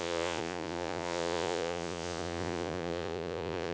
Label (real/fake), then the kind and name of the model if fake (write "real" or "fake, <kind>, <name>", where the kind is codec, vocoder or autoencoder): fake, vocoder, Vocos